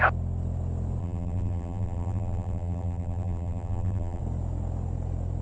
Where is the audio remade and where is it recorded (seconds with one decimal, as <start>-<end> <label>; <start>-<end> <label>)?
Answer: 0.0-1.0 recorded; 1.0-4.2 remade; 4.2-5.4 recorded